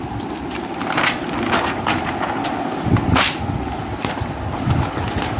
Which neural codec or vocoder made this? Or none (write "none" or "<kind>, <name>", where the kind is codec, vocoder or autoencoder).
none